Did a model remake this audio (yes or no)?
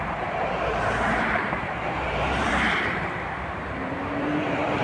yes